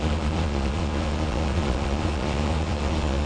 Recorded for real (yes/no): no